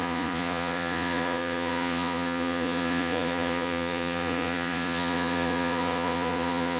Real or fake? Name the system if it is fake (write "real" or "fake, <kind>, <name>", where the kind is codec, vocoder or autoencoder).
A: fake, vocoder, Vocos